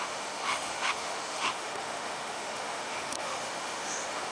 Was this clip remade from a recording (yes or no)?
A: yes